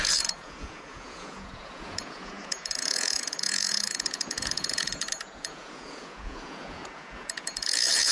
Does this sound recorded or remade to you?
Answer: remade